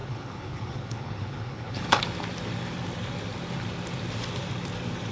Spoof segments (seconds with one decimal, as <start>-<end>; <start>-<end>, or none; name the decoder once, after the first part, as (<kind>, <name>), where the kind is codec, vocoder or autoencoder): 0.0-2.0 (codec, HILCodec)